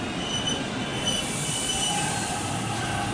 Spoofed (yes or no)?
no